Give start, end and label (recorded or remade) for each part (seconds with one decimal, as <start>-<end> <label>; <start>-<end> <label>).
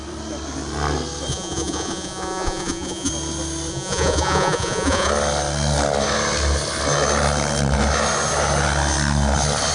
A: 0.0-1.3 recorded; 1.3-3.1 remade; 3.1-3.7 recorded; 3.7-5.1 remade; 5.1-9.7 recorded